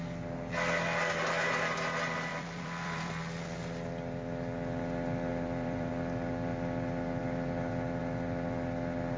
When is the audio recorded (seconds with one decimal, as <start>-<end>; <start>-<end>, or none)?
0.0-2.3; 3.2-5.3; 5.9-9.2